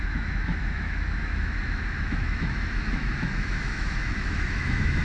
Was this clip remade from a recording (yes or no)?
yes